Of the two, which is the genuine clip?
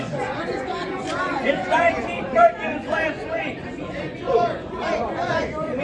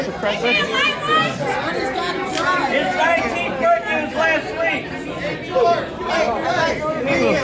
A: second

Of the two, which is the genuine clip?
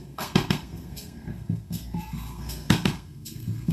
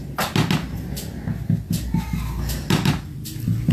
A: second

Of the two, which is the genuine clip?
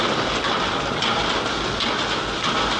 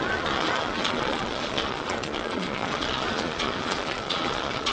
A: first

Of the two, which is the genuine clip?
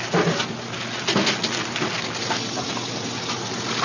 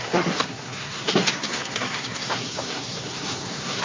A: first